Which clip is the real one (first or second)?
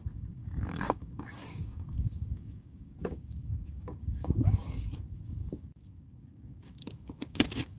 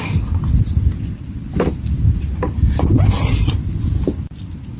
second